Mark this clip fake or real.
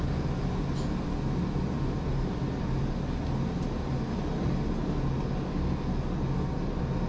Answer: real